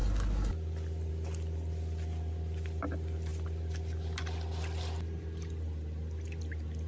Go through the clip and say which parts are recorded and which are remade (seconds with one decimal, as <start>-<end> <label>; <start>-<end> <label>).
0.0-6.9 recorded